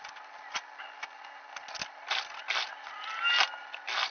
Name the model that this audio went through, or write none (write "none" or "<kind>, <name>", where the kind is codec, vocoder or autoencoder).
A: none